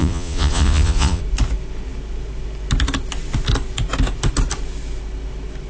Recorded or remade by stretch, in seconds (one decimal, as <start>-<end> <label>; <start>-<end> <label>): 0.0-1.2 remade; 1.2-5.7 recorded